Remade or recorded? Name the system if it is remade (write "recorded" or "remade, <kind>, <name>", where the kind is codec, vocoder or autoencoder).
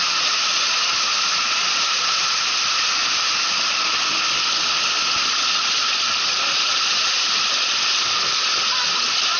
recorded